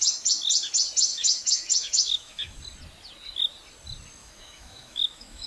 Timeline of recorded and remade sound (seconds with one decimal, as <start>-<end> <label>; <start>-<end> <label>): 0.0-1.1 recorded; 1.1-2.6 remade; 2.6-4.2 recorded; 4.2-5.5 remade